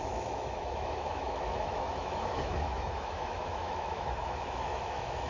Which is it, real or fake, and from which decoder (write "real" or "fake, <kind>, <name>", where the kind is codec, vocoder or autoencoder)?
fake, autoencoder, DAC-VAE